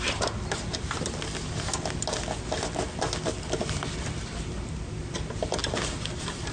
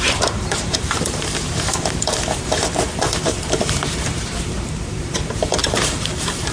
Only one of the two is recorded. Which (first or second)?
first